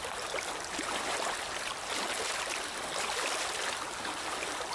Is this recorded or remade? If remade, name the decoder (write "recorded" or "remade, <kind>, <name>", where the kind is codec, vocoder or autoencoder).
recorded